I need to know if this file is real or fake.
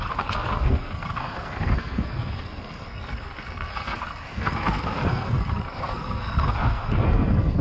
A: fake